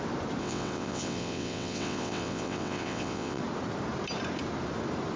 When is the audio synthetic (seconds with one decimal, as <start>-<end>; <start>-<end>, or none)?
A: 0.4-3.4